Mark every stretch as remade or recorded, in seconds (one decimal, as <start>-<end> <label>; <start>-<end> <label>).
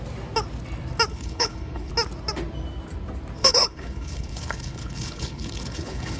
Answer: 0.0-1.1 recorded; 1.1-1.9 remade; 1.9-3.4 recorded; 3.4-6.2 remade